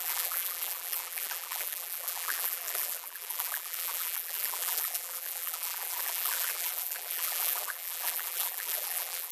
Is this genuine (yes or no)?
no